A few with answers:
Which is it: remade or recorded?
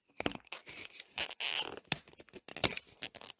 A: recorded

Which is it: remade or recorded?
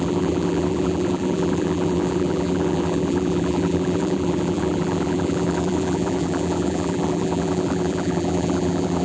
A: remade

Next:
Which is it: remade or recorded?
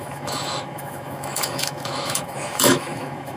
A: remade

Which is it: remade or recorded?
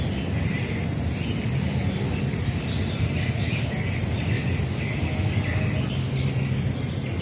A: recorded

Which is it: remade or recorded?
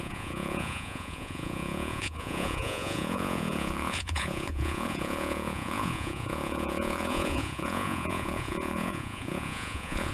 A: remade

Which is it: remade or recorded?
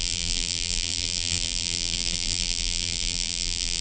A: remade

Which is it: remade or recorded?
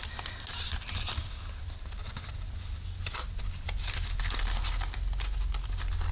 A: recorded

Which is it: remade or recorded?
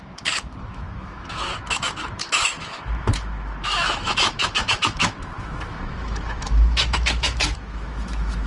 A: remade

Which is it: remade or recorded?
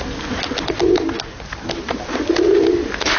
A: recorded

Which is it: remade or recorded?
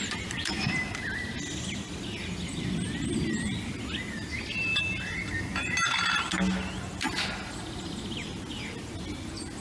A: recorded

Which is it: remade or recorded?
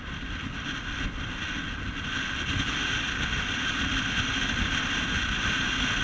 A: recorded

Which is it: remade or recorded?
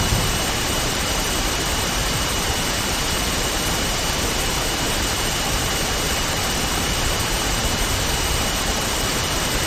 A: remade